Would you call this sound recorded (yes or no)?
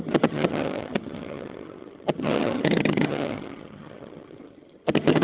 no